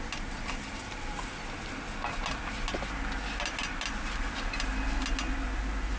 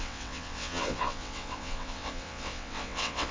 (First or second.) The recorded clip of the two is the first